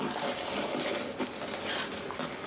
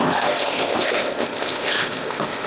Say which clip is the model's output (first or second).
second